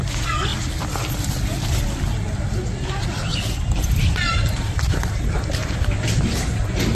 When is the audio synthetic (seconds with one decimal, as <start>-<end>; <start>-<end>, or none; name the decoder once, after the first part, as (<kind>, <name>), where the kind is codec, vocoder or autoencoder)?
none